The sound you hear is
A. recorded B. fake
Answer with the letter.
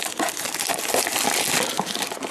A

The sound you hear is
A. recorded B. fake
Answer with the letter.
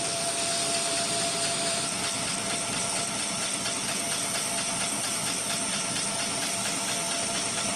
A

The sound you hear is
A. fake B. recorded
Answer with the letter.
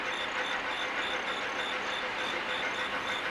B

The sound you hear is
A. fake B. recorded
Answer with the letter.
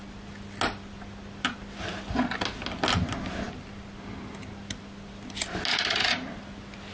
B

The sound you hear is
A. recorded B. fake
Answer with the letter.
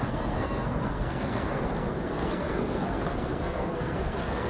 B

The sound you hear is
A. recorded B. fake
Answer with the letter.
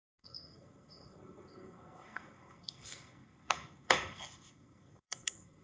B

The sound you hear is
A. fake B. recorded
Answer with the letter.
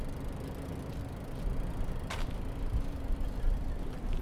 B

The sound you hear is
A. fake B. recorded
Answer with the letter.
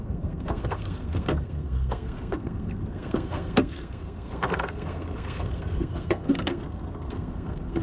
A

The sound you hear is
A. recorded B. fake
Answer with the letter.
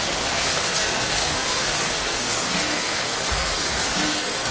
B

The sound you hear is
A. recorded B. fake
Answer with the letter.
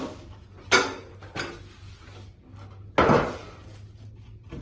A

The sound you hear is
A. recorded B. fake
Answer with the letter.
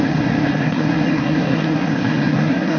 B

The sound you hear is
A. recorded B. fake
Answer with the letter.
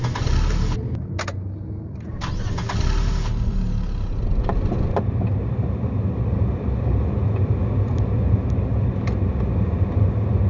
A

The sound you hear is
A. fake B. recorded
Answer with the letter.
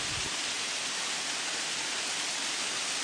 B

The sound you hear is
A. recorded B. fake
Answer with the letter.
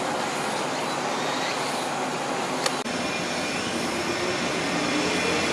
A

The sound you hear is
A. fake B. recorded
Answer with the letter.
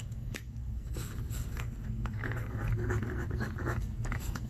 A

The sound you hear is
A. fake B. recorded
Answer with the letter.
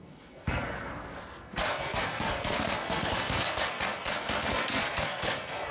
A